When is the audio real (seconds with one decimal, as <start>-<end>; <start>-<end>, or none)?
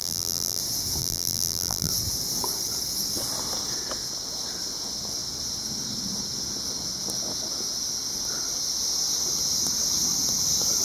0.6-1.0; 1.9-10.8